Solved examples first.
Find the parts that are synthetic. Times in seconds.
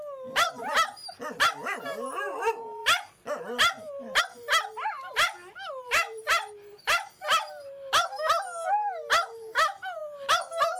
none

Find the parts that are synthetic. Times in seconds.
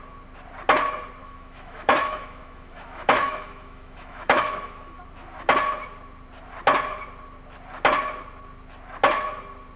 1.2-5.0 (autoencoder, DAC-VAE)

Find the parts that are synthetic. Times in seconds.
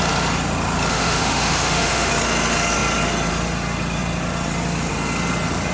0.9-2.1 (autoencoder, DAC-VAE)